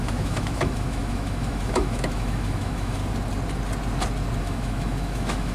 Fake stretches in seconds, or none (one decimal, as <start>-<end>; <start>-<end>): 0.0-3.0; 4.4-5.5